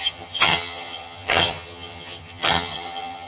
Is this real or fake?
fake